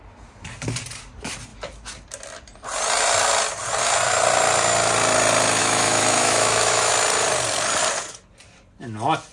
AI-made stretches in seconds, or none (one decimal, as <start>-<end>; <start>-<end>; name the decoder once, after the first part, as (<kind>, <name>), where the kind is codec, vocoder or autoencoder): 5.6-6.9 (autoencoder, DAC-VAE)